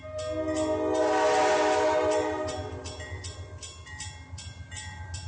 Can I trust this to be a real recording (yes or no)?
yes